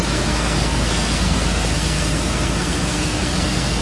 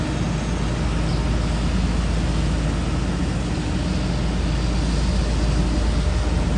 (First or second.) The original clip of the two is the second